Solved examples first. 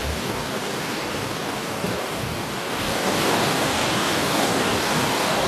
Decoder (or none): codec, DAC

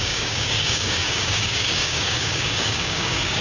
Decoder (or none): codec, DAC